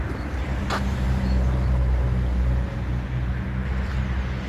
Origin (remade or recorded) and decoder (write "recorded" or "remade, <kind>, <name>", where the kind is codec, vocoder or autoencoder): recorded